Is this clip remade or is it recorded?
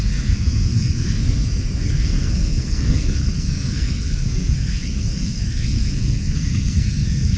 remade